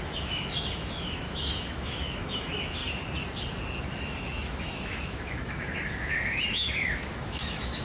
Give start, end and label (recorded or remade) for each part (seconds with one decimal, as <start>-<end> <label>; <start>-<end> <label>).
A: 0.0-2.8 remade; 2.8-3.8 recorded; 3.8-7.8 remade